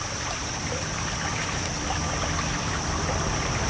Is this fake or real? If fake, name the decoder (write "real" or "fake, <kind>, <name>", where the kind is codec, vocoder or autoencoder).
real